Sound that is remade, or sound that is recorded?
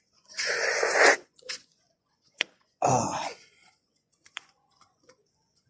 remade